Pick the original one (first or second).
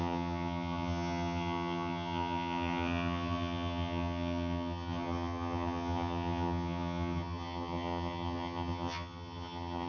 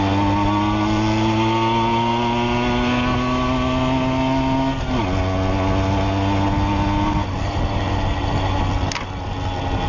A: second